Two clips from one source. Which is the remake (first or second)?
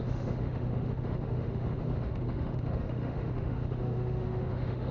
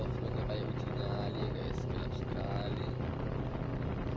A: first